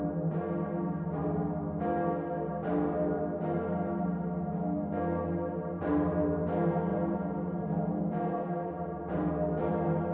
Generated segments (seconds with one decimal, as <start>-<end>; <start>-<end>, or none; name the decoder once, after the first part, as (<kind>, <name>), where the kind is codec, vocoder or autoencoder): 6.9-9.3 (vocoder, Vocos)